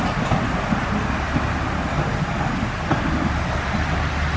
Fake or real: real